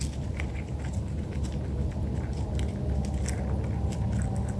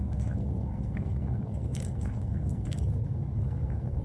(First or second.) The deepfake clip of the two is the second